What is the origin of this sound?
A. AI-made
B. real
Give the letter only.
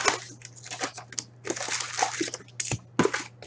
B